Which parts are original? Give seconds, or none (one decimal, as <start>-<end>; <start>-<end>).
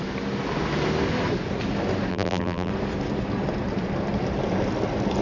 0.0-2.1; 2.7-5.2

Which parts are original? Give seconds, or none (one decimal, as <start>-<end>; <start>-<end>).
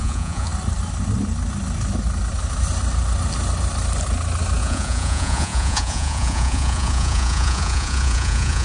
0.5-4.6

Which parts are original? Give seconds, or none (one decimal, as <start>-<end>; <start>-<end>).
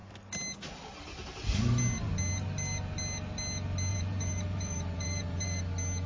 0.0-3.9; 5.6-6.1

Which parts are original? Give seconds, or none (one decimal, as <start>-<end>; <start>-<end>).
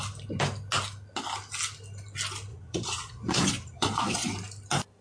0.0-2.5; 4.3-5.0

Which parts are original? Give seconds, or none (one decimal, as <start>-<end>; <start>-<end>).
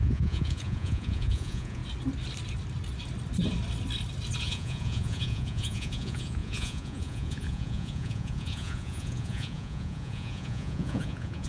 1.8-4.4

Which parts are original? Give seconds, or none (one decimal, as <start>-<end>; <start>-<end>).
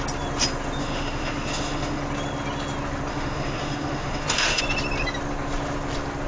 0.0-0.8; 2.0-3.1; 4.6-6.3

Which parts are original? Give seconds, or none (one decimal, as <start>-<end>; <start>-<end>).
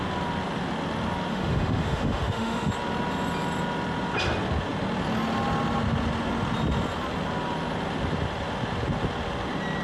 0.0-1.3; 2.7-9.8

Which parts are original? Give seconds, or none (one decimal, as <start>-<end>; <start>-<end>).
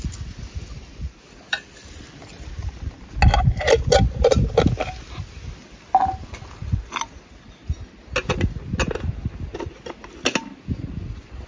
0.0-11.5